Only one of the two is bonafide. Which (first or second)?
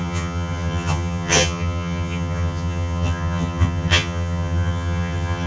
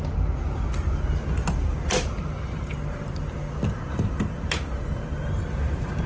second